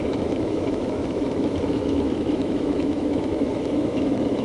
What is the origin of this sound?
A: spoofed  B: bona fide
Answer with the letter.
A